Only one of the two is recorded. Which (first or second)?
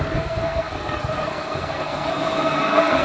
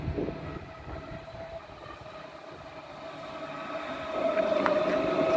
second